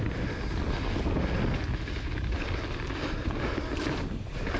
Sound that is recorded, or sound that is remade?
recorded